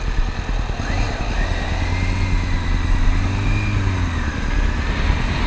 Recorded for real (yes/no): yes